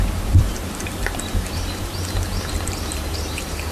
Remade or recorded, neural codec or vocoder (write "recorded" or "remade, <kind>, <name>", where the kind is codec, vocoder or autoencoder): remade, vocoder, BigVGAN v2